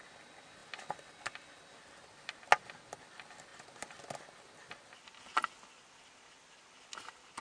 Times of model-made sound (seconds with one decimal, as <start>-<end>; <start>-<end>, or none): none